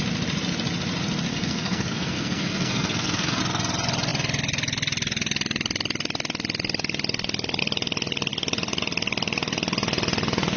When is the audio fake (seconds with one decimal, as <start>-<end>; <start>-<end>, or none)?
1.3-3.4